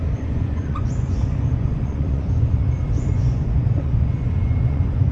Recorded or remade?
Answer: remade